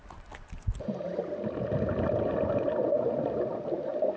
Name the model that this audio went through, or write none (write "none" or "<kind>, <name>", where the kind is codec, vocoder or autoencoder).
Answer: none